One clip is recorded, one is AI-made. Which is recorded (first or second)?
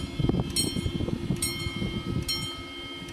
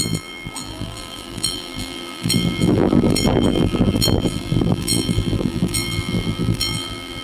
first